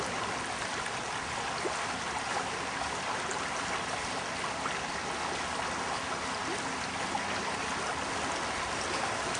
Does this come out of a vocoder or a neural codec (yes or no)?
no